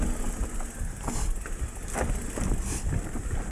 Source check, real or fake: real